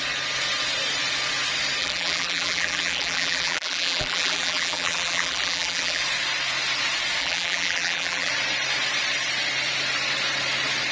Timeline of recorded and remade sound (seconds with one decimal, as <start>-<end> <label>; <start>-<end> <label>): 0.0-1.8 recorded; 1.8-6.0 remade; 6.0-7.2 recorded; 7.2-8.3 remade; 8.3-10.9 recorded